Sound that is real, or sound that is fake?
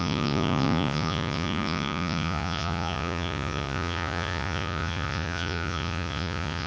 fake